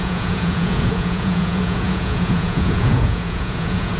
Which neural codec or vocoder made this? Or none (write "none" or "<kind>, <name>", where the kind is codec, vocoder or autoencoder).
vocoder, Vocos